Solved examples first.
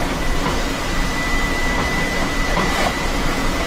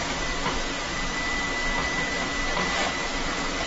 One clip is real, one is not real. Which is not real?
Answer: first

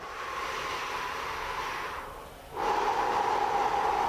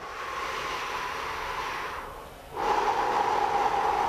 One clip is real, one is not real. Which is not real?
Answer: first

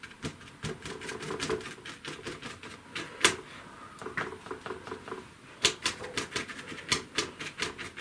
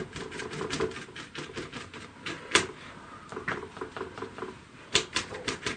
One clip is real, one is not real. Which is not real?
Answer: second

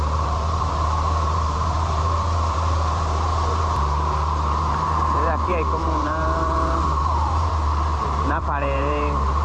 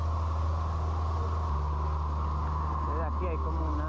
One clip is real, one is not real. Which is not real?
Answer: first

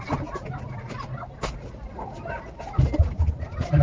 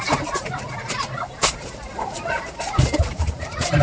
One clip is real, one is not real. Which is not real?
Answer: second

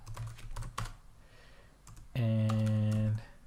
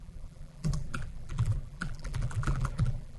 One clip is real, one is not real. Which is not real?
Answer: second